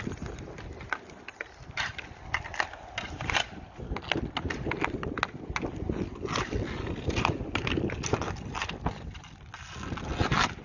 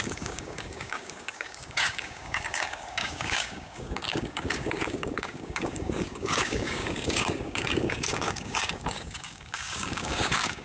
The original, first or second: first